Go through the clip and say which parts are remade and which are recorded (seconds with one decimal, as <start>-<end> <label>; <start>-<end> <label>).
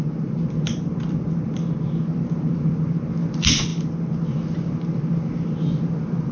0.0-6.3 recorded